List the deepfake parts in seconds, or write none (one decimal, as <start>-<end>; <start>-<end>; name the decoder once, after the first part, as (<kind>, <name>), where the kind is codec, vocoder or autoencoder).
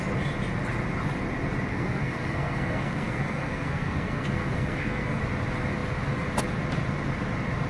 1.7-5.2 (codec, SNAC)